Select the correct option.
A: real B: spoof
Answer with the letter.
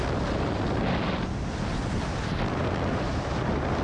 A